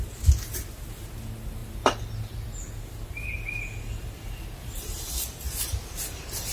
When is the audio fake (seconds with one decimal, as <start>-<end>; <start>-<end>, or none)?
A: none